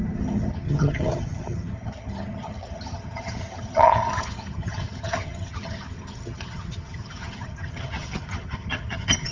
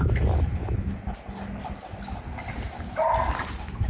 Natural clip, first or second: second